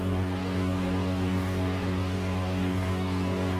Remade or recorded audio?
remade